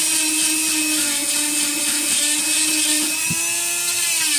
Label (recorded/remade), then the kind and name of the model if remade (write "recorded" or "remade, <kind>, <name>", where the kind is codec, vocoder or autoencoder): recorded